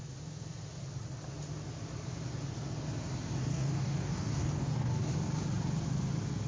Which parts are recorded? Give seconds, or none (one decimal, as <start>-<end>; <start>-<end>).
0.0-3.5; 5.1-6.5